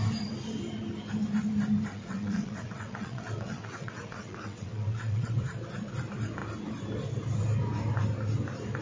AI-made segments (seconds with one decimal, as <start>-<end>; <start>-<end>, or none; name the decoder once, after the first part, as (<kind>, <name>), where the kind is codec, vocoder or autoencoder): 1.9-5.3 (vocoder, WaveNeXt)